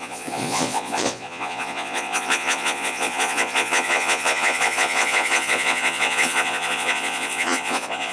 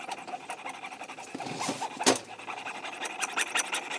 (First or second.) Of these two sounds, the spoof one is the first